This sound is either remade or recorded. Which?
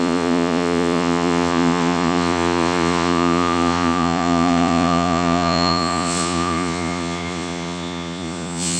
remade